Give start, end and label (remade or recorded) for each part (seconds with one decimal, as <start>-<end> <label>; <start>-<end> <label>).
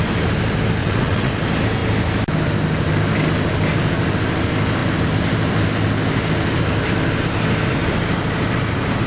0.0-0.8 recorded; 0.8-1.3 remade; 1.3-9.1 recorded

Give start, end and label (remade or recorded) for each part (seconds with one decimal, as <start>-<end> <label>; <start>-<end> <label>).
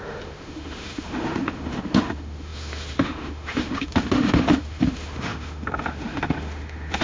0.0-7.0 remade